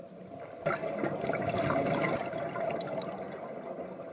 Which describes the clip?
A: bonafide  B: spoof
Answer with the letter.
A